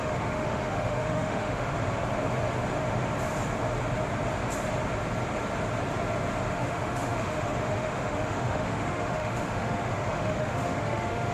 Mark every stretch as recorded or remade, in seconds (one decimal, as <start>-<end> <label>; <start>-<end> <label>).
0.0-1.7 remade; 1.7-6.5 recorded; 6.5-11.3 remade